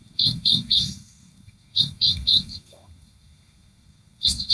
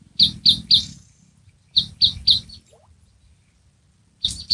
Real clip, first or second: second